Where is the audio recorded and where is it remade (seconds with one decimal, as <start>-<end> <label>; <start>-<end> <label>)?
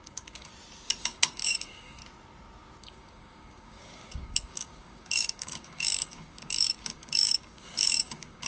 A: 0.0-0.5 remade; 0.5-1.0 recorded; 1.0-2.0 remade; 2.0-2.8 recorded; 2.8-8.5 remade